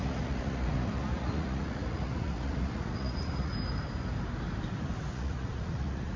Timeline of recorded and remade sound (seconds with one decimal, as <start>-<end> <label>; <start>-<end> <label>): 0.0-3.5 remade; 3.5-5.1 recorded; 5.1-6.2 remade